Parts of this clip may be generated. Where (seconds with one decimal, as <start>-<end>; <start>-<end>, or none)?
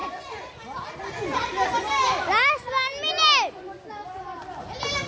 none